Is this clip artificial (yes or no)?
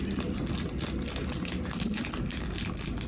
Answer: no